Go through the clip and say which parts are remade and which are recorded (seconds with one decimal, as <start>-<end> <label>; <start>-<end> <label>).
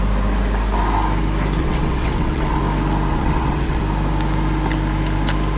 0.0-1.6 recorded; 1.6-2.6 remade; 2.6-3.1 recorded; 3.1-3.8 remade; 3.8-5.6 recorded